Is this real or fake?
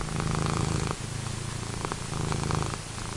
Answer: real